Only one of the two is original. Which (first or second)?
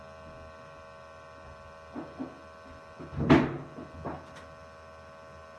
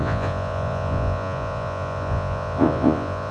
first